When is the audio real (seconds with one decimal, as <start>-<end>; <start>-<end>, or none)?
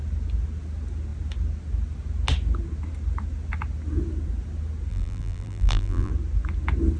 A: 0.0-4.9; 6.1-7.0